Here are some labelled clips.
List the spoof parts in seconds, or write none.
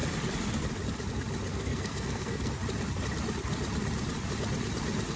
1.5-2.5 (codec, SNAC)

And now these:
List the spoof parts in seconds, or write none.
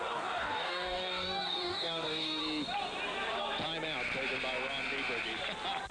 0.0-2.4 (codec, DAC)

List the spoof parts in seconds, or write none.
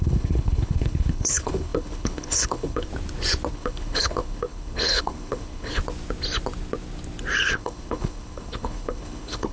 0.0-2.9 (codec, HILCodec); 3.5-5.8; 7.4-9.5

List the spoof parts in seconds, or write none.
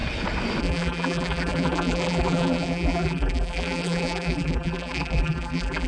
0.6-5.9 (vocoder, BigVGAN v2)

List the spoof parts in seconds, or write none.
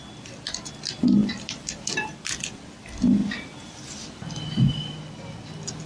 1.2-2.6 (vocoder, BigVGAN v2); 3.2-4.6